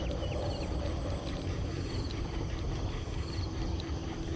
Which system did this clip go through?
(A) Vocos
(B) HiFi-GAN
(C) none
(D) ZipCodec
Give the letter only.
C